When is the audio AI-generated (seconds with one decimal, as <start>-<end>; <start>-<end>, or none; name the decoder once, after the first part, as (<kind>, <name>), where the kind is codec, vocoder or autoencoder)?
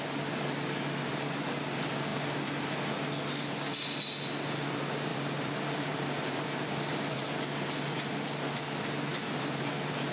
5.1-7.2 (vocoder, BigVGAN v2); 9.1-10.1